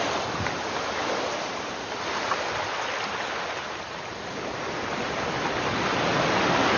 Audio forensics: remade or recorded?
recorded